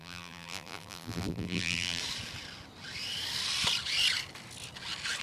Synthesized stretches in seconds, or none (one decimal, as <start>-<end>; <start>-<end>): 0.0-2.0